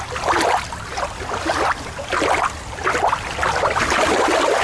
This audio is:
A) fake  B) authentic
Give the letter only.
B